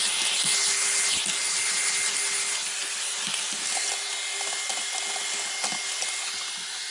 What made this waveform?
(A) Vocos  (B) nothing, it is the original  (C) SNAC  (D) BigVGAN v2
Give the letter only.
B